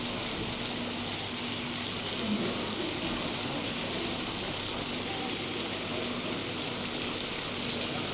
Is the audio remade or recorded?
recorded